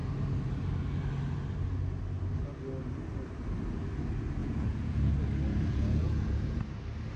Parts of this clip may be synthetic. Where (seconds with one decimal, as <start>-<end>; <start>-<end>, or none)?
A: 4.4-5.1; 5.5-6.6